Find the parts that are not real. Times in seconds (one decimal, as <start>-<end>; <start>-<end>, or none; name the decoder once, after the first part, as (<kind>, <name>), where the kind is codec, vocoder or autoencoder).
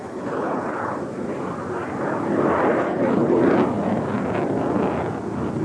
0.0-0.9 (codec, HILCodec); 2.7-3.4